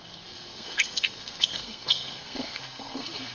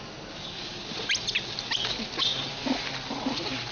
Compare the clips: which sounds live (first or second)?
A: second